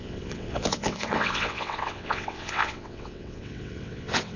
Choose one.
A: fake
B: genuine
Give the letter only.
A